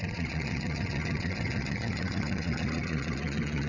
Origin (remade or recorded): remade